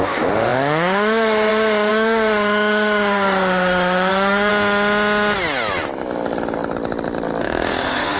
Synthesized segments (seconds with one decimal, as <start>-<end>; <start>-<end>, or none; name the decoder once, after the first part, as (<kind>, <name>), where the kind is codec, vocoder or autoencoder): 0.0-4.5 (autoencoder, DAC-VAE); 7.4-8.2